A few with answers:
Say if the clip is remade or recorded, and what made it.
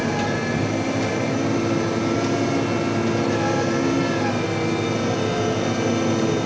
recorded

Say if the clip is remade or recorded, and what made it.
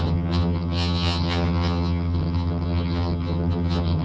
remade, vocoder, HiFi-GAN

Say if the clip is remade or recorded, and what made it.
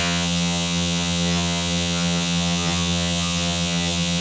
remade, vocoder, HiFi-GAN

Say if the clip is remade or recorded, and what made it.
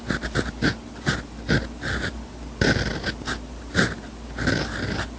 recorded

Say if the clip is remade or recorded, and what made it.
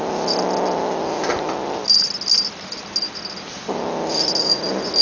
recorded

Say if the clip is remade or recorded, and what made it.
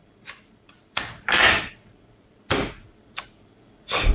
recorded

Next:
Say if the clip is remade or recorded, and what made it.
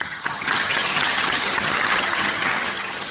remade, vocoder, HiFi-GAN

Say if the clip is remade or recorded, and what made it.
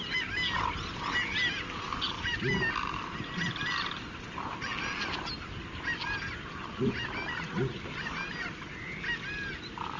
recorded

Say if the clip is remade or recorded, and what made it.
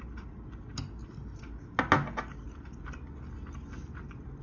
recorded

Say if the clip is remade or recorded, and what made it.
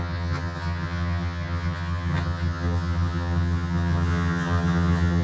remade, vocoder, HiFi-GAN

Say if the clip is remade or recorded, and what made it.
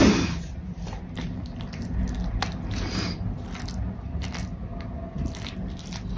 recorded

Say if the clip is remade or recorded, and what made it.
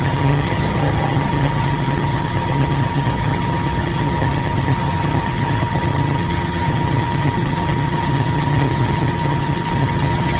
remade, vocoder, HiFi-GAN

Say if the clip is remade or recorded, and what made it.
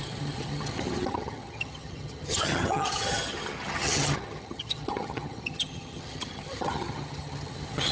remade, vocoder, HiFi-GAN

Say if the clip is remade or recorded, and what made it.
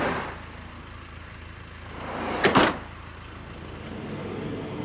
recorded